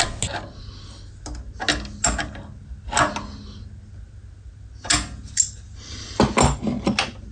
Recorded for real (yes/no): yes